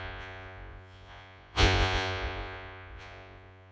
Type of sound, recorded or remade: remade